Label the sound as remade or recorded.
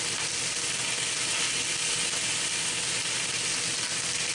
recorded